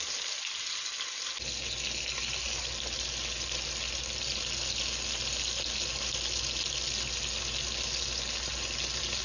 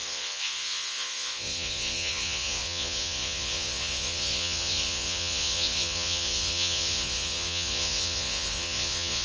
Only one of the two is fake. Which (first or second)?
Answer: second